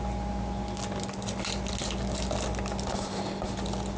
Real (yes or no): yes